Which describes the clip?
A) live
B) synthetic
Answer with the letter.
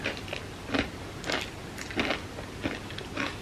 A